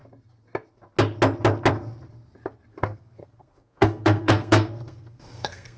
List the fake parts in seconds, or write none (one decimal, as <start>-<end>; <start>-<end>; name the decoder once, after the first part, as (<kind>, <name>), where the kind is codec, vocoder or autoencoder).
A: 2.7-5.8 (codec, SNAC)